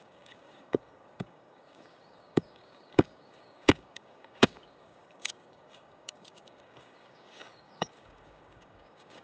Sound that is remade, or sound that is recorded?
remade